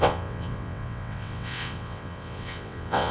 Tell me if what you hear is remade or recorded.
remade